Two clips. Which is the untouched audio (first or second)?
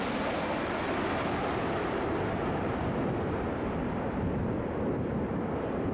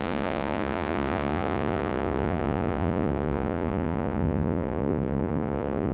first